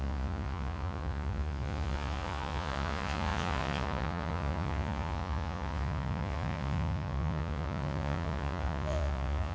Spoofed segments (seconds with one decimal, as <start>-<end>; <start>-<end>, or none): 0.0-9.5